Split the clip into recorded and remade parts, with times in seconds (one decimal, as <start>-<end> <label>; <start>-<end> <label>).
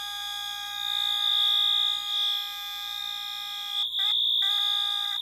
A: 0.0-5.2 recorded